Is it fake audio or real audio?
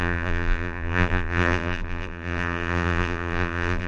fake